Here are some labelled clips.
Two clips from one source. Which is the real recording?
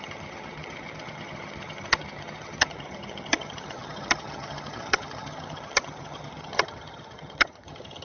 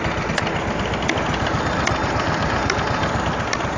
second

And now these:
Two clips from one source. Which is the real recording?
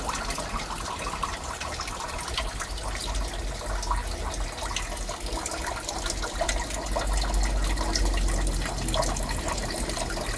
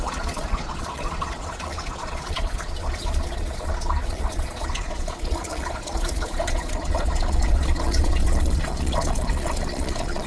first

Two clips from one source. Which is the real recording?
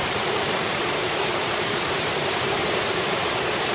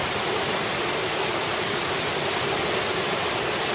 second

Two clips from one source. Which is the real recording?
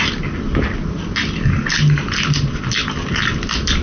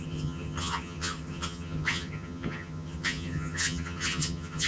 first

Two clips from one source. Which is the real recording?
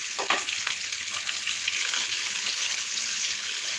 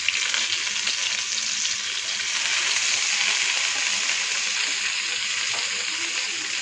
second